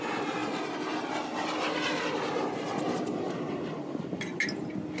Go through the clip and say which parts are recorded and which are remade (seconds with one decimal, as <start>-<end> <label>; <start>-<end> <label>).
0.0-5.0 recorded